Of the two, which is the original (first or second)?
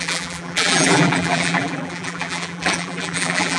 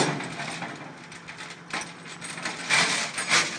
second